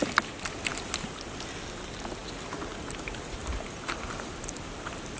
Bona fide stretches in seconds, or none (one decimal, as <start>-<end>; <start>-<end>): 0.0-5.2